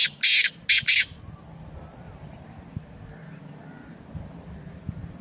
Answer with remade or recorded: recorded